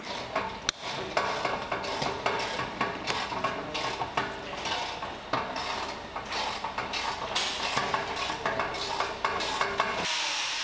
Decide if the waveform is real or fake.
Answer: real